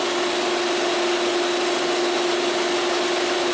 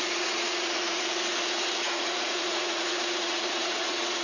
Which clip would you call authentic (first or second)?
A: first